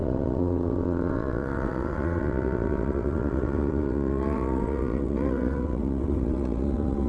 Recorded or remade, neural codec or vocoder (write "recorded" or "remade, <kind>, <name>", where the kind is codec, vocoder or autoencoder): remade, vocoder, WaveNeXt